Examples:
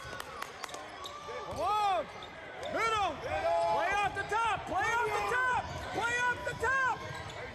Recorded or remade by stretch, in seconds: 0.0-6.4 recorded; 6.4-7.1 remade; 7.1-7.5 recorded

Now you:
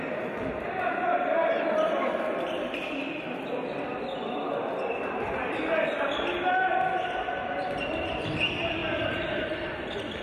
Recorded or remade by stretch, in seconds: 0.0-10.2 recorded

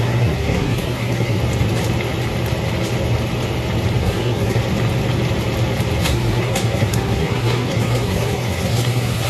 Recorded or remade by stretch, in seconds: 0.0-1.4 remade; 1.4-4.0 recorded; 4.0-4.6 remade; 4.6-6.0 recorded; 6.0-9.3 remade

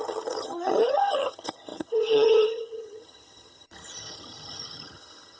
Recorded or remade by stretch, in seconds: 0.0-5.4 remade

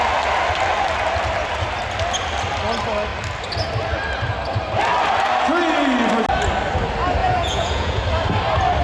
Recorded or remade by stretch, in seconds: 0.0-7.2 recorded; 7.2-8.0 remade; 8.0-8.8 recorded

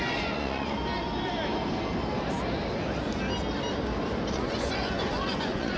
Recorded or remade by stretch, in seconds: 0.0-0.8 remade; 0.8-4.3 recorded; 4.3-5.8 remade

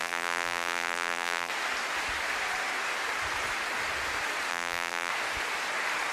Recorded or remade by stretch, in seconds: 0.0-1.5 remade; 1.5-4.5 recorded; 4.5-5.1 remade; 5.1-6.1 recorded